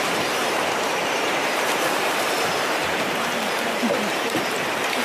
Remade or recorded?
remade